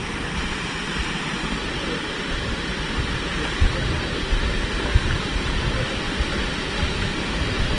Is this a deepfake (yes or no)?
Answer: no